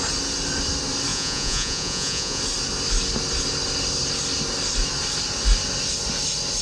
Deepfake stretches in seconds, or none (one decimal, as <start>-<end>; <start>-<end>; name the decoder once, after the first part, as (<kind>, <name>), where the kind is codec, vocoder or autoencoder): 1.1-2.4 (vocoder, Vocos)